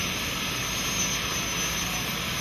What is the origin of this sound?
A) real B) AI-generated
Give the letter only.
A